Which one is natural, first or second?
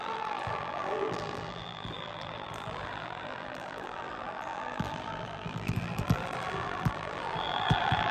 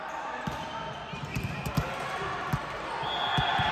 second